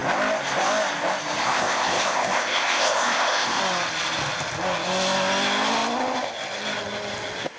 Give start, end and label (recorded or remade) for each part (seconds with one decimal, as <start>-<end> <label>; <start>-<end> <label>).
0.0-1.4 recorded; 1.4-3.6 remade; 3.6-7.6 recorded